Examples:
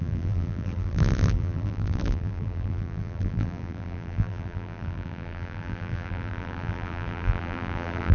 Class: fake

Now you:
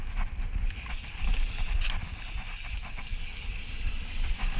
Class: real